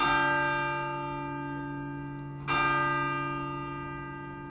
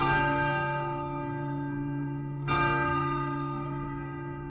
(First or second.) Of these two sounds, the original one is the first